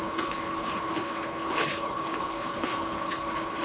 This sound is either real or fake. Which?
fake